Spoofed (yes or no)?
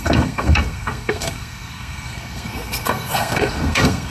yes